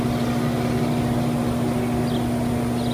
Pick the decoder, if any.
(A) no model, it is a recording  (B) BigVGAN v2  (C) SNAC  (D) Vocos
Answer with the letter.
A